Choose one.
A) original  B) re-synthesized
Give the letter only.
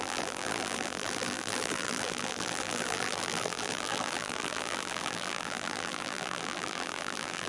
B